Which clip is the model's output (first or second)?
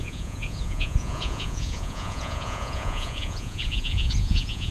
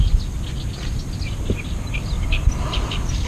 first